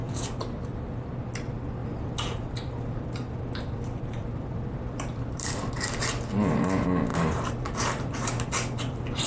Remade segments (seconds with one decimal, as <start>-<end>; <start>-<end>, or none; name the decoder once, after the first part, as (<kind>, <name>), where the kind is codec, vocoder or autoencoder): 0.0-1.2 (vocoder, BigVGAN v2); 1.8-6.0; 7.1-9.3